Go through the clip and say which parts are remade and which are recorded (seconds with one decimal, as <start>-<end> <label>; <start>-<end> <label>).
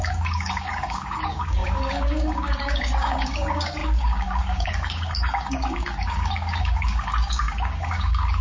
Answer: 0.0-8.4 remade